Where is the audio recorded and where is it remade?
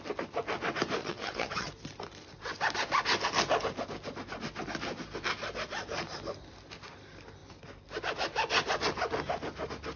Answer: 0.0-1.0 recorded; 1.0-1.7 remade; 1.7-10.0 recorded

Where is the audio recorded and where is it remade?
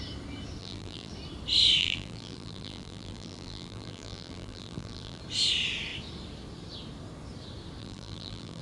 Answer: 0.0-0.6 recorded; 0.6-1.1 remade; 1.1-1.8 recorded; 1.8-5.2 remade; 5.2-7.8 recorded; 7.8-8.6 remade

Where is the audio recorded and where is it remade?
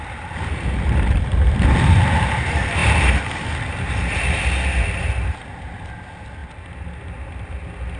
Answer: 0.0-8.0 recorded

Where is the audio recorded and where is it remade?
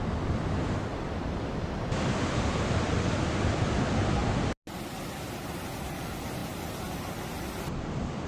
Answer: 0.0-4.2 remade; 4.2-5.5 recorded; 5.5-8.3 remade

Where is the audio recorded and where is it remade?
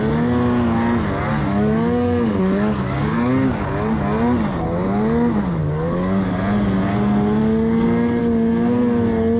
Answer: 0.0-1.3 recorded; 1.3-3.3 remade; 3.3-5.6 recorded; 5.6-6.3 remade; 6.3-7.4 recorded; 7.4-8.2 remade; 8.2-9.4 recorded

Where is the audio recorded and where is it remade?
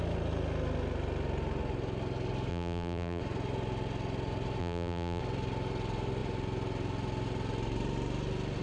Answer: 0.0-2.5 recorded; 2.5-3.2 remade; 3.2-4.6 recorded; 4.6-5.2 remade; 5.2-8.6 recorded